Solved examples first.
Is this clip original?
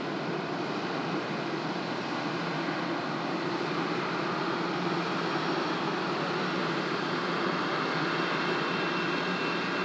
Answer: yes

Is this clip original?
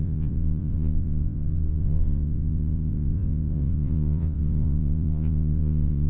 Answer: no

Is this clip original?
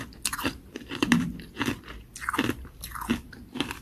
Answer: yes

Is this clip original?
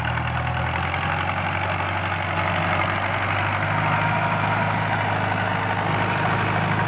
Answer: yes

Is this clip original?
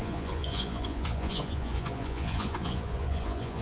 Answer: no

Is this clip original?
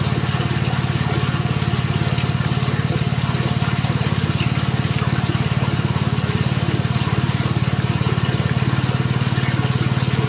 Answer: yes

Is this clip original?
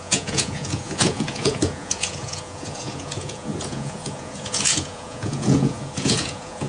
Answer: no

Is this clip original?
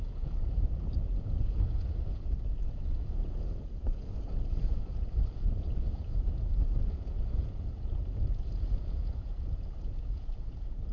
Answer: no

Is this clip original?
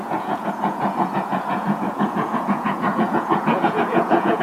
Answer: no